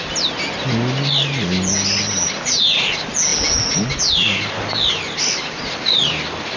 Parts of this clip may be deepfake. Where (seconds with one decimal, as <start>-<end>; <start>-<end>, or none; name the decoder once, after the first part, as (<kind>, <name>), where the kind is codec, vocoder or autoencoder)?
none